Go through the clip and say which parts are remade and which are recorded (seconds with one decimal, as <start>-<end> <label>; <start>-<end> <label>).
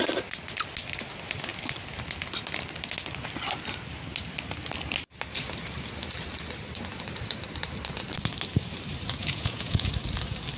0.0-9.2 recorded; 9.2-9.9 remade; 9.9-10.6 recorded